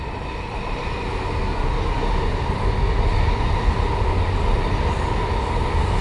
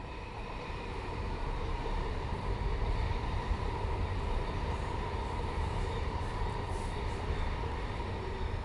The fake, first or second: second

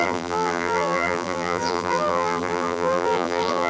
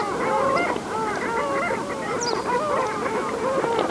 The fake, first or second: first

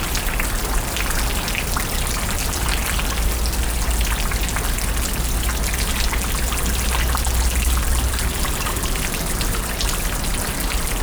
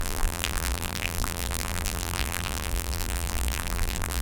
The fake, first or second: second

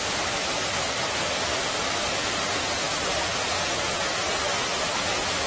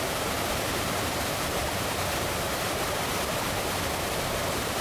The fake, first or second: second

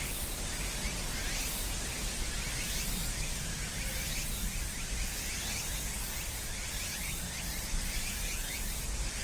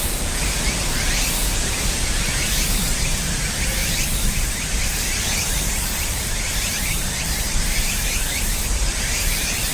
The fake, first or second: second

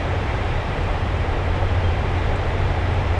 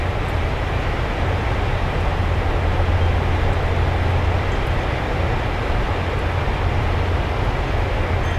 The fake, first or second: first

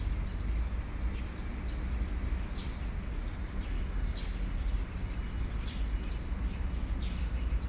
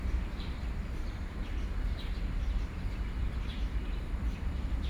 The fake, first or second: second